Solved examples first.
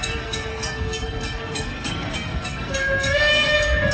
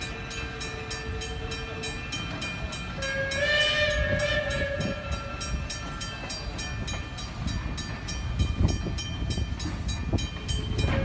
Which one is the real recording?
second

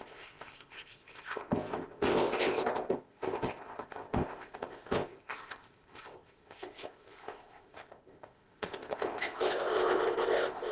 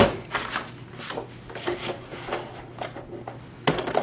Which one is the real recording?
second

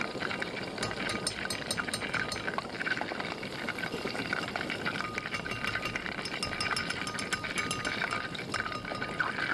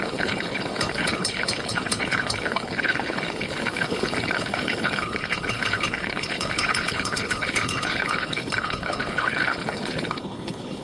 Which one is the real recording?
first